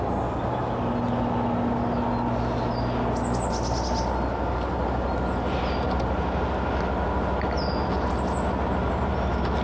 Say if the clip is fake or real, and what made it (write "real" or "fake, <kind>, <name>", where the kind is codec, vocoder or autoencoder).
real